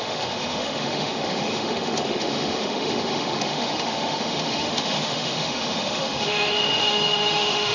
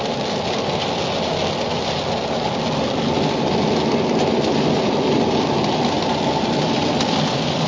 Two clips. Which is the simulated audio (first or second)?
first